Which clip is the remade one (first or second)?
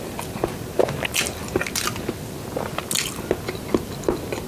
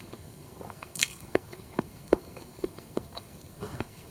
second